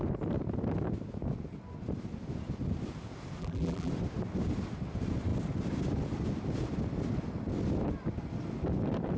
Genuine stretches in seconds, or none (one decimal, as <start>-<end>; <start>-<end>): 0.0-3.4; 3.9-9.2